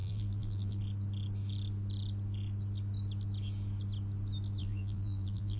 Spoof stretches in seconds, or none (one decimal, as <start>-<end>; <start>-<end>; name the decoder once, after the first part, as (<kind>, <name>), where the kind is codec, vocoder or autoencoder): 0.0-0.8 (vocoder, BigVGAN v2); 4.6-5.6